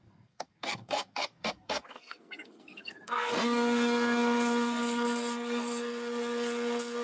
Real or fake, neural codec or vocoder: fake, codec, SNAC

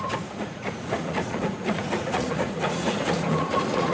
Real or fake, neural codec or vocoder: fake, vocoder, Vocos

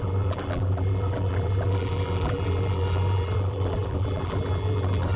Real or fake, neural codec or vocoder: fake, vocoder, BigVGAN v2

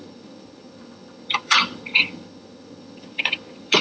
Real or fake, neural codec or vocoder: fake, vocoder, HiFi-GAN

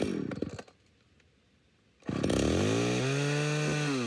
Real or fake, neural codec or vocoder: real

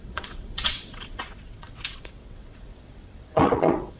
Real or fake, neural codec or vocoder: fake, vocoder, WaveNeXt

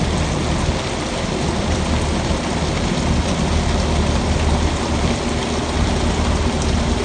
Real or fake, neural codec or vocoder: real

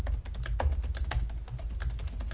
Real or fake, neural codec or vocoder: real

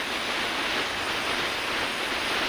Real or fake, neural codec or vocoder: real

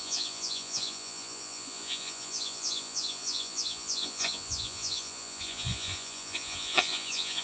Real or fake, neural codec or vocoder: fake, vocoder, Vocos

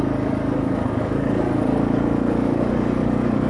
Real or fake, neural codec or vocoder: fake, codec, DAC